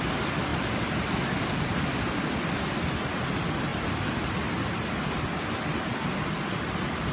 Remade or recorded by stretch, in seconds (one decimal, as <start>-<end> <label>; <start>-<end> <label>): 0.0-7.1 recorded